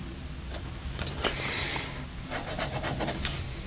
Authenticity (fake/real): real